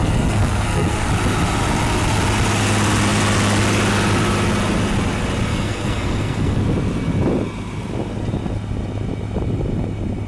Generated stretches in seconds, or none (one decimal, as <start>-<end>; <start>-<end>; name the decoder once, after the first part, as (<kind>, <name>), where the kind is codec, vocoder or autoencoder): 0.0-1.1 (codec, SNAC); 5.5-6.6